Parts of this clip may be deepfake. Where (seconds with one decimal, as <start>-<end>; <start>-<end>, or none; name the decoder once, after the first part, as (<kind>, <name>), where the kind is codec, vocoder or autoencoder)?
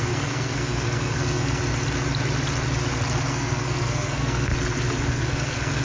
0.0-1.6 (codec, SNAC); 3.3-4.5; 5.1-5.8